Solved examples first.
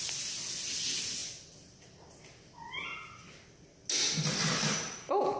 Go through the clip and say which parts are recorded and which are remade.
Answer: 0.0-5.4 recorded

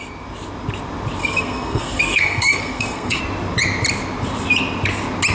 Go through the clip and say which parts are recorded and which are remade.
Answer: 0.0-1.2 recorded; 1.2-3.2 remade; 3.2-5.3 recorded